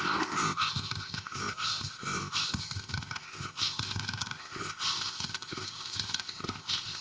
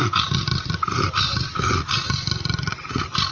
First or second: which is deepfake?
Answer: first